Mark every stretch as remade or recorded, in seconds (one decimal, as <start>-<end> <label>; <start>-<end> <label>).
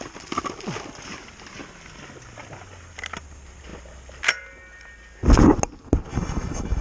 0.0-6.1 recorded; 6.1-6.8 remade